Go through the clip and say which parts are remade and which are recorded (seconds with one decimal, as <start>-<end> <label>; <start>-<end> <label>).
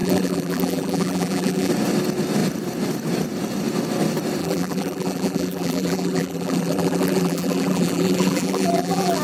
0.0-1.7 remade; 1.7-4.4 recorded; 4.4-9.2 remade